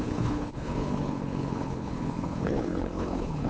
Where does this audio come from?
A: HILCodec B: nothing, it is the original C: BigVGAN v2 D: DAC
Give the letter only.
A